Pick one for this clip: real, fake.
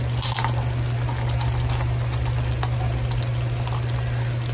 real